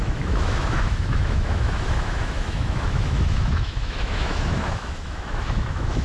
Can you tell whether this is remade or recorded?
remade